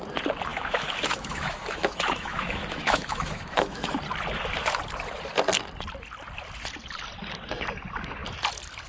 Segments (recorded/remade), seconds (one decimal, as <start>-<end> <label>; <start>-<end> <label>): 0.0-0.5 recorded; 0.5-4.0 remade; 4.0-8.9 recorded